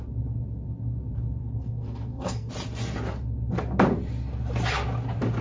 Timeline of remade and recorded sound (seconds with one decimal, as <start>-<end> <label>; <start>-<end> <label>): 0.0-1.4 recorded; 1.4-2.5 remade; 2.5-5.4 recorded

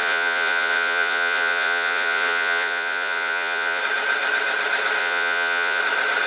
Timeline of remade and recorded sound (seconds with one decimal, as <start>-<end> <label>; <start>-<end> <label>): 0.0-3.8 remade; 3.8-5.0 recorded; 5.0-5.8 remade; 5.8-6.3 recorded

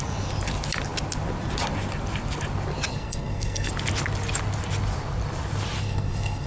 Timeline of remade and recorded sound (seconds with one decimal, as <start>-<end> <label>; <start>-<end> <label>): 0.0-2.9 recorded; 2.9-3.7 remade; 3.7-5.8 recorded; 5.8-6.5 remade

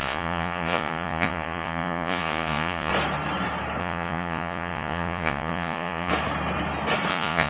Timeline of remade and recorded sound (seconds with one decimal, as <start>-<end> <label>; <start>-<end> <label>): 0.0-2.9 remade; 2.9-3.8 recorded; 3.8-6.1 remade; 6.1-7.1 recorded; 7.1-7.5 remade

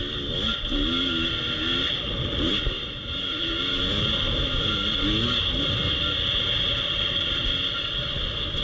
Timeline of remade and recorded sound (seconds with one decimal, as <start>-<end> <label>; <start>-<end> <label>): 0.0-2.5 recorded; 2.5-3.8 remade; 3.8-8.6 recorded